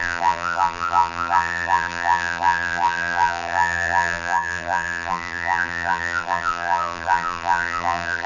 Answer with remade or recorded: remade